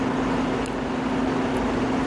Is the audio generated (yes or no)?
no